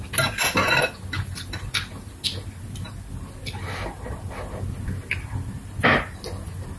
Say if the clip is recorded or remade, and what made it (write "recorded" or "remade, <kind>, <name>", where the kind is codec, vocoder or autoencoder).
recorded